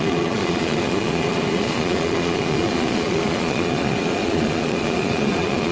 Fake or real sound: fake